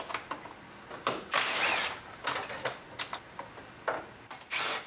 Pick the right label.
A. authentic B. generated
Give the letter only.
A